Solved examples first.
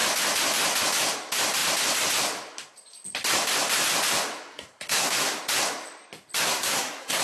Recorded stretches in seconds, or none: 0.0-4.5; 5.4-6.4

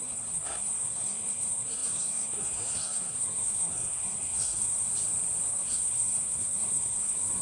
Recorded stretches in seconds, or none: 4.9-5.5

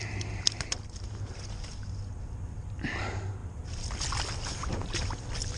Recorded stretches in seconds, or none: 0.0-5.6